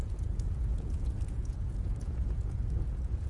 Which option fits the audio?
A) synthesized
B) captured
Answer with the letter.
A